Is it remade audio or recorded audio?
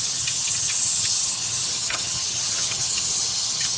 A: remade